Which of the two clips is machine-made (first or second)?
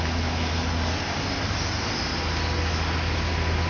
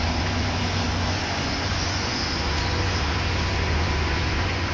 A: second